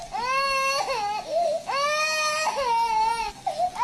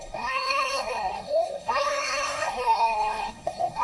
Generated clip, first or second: second